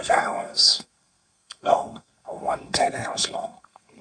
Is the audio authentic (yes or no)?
no